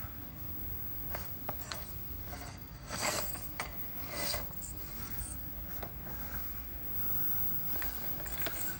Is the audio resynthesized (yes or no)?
yes